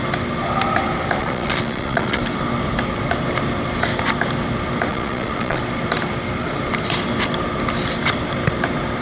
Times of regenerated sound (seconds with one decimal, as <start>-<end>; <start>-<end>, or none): 1.2-2.2; 4.9-5.6